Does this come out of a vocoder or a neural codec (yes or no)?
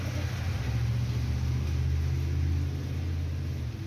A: no